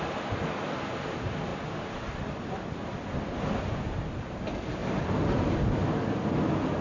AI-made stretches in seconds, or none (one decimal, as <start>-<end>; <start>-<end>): 4.8-5.5